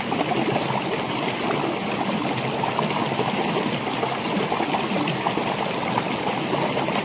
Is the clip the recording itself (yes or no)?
yes